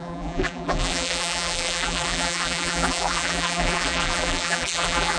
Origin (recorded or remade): remade